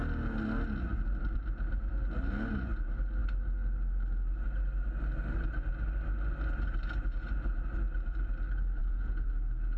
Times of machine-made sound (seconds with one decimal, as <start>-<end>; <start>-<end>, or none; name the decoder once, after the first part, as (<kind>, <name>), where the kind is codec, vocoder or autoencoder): 8.8-9.3 (vocoder, Vocos)